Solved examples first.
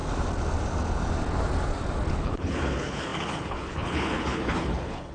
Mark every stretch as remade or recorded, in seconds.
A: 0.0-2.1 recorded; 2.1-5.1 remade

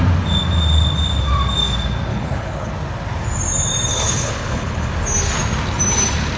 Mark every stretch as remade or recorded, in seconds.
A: 0.0-2.1 recorded; 2.1-2.7 remade; 2.7-3.9 recorded; 3.9-4.9 remade; 4.9-6.4 recorded